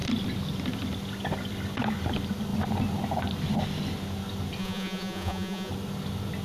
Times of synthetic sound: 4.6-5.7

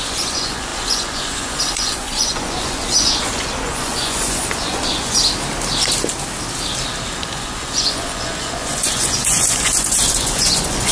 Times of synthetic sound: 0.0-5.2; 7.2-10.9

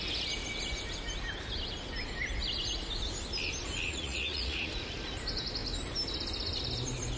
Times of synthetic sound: 3.9-4.7